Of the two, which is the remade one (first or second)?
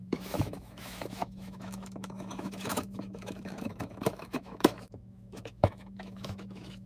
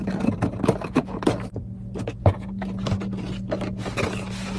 first